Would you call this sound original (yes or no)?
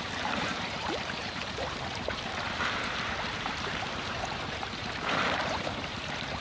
no